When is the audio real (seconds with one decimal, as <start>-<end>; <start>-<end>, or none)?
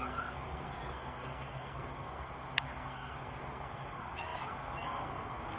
none